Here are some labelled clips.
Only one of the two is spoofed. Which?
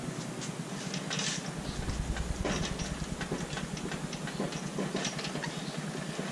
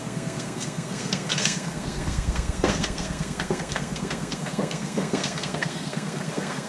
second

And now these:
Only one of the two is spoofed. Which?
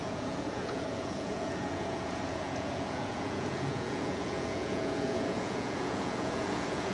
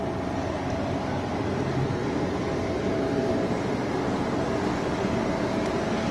first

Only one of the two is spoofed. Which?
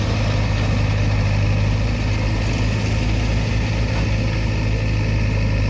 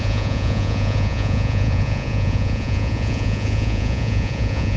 second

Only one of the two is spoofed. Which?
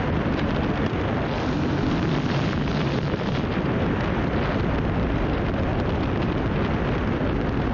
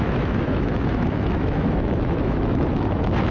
second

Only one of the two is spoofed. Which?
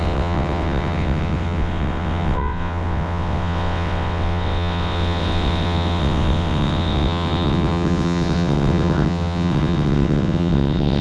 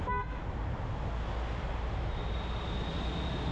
first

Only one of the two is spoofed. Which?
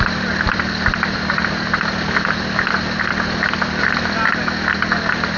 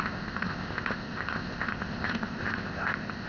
second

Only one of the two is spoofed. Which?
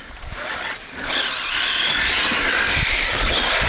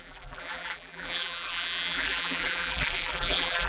second